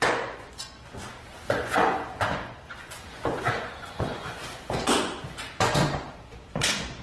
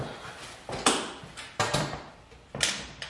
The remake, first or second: first